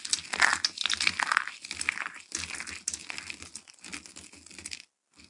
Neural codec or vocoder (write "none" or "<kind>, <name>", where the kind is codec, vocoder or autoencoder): none